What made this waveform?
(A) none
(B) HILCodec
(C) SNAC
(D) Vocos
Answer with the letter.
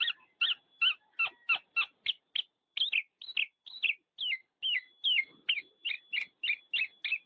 A